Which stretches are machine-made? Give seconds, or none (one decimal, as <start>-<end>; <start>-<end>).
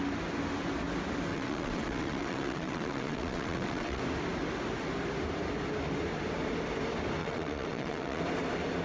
1.3-4.0; 7.2-8.2